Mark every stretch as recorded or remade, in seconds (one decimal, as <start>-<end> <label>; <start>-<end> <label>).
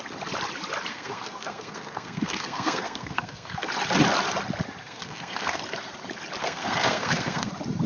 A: 0.0-0.9 recorded; 0.9-3.7 remade; 3.7-4.8 recorded; 4.8-5.6 remade; 5.6-6.4 recorded; 6.4-7.5 remade; 7.5-7.9 recorded